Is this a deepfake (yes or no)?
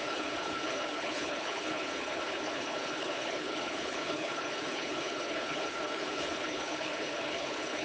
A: yes